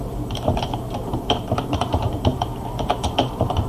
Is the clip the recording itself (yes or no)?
no